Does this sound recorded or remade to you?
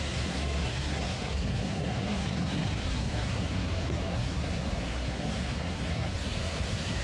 remade